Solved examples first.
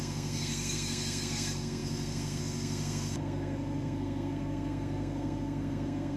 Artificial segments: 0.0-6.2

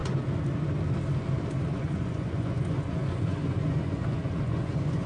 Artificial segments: 1.6-5.1

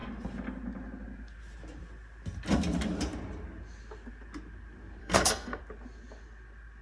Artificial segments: 5.0-5.6

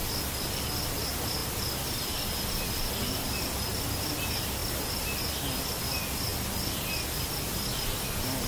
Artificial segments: none